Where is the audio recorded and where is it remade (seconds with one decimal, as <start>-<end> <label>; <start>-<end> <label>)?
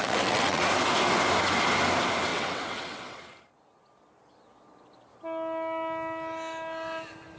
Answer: 0.0-0.6 remade; 0.6-2.3 recorded; 2.3-3.2 remade; 3.2-7.4 recorded